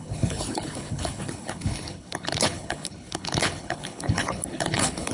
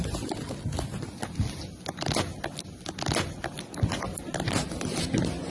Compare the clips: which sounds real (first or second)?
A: second